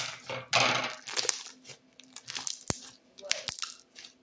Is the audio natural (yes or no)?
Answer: yes